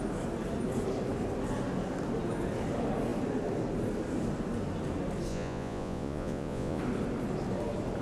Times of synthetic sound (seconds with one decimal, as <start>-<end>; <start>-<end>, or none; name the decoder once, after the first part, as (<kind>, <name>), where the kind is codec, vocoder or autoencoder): 5.3-6.8 (vocoder, Vocos)